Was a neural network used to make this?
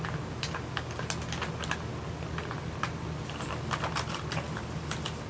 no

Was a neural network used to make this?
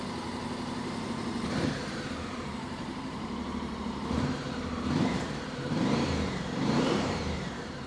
yes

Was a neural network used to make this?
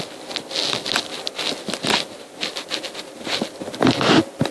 no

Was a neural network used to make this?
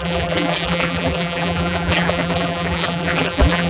yes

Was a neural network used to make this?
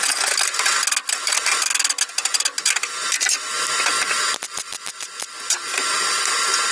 no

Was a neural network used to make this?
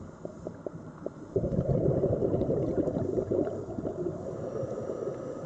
yes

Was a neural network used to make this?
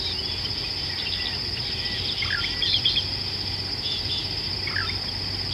no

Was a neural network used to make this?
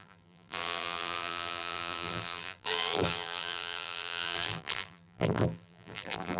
yes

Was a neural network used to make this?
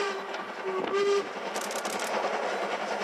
no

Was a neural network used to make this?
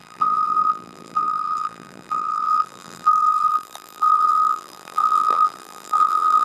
yes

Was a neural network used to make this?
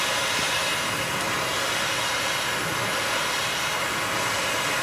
no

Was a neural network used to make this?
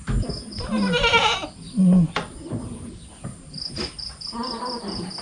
no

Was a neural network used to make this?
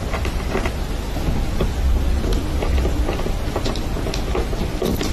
yes